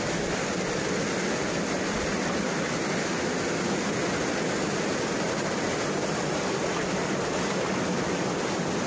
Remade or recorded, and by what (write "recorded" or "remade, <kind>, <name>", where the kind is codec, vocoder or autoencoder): recorded